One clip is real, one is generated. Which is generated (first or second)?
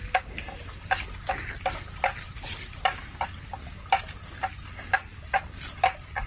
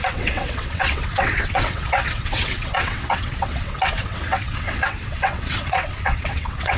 second